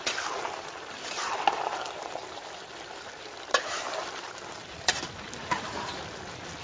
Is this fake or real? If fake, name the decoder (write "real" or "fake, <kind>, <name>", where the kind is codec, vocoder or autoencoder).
fake, vocoder, BigVGAN v2